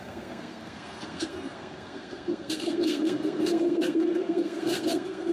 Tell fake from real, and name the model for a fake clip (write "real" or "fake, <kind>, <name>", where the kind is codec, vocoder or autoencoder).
fake, codec, SNAC